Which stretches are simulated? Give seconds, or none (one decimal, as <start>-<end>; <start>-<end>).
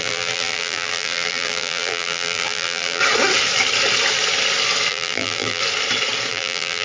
0.0-3.0; 4.9-5.6; 6.3-6.8